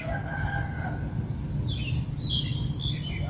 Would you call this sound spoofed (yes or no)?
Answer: no